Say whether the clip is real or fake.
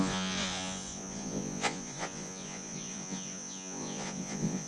fake